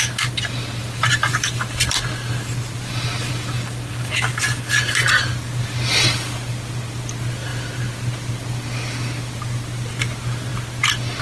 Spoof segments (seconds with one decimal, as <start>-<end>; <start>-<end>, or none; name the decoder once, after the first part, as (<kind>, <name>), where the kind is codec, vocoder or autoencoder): 0.8-3.3 (vocoder, BigVGAN v2); 7.5-8.3